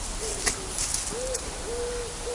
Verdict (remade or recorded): recorded